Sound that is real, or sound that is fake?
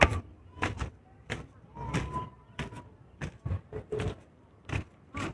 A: fake